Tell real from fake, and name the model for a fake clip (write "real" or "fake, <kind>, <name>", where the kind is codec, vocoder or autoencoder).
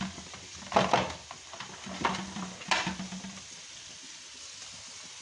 fake, vocoder, BigVGAN v2